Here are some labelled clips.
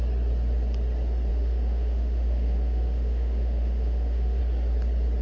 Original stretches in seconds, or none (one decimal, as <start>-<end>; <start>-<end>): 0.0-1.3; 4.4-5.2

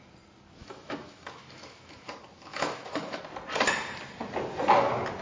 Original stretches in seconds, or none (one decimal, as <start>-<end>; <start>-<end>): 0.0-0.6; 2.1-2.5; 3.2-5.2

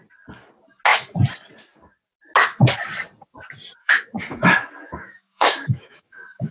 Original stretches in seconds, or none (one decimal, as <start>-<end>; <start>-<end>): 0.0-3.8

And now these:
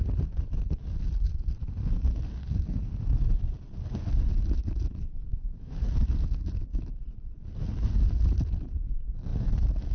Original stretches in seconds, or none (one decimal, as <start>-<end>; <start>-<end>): 0.0-5.3; 5.8-9.9